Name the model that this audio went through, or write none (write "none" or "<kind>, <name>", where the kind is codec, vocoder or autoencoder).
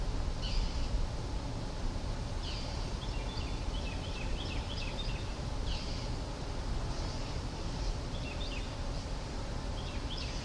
none